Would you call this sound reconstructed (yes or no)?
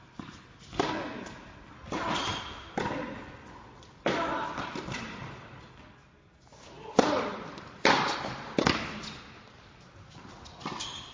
no